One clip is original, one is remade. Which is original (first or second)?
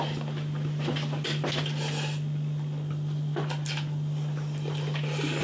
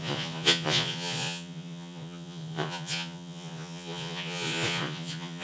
first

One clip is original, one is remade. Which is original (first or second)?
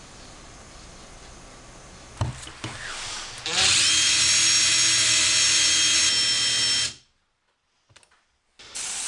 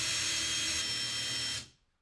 first